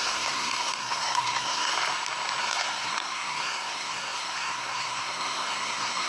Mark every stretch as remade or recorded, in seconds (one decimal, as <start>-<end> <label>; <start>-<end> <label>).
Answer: 0.0-1.7 remade; 1.7-2.4 recorded; 2.4-6.1 remade